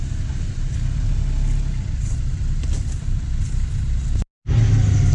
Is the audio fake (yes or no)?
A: no